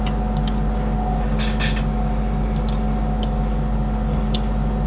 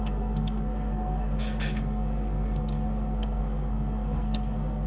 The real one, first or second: first